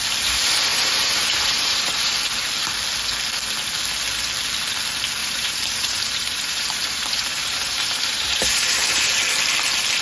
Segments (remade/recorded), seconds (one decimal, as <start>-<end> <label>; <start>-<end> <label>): 0.0-0.7 recorded; 0.7-2.1 remade; 2.1-5.2 recorded; 5.2-9.1 remade; 9.1-10.0 recorded